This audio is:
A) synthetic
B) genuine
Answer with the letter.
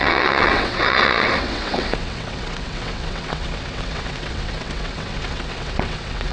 A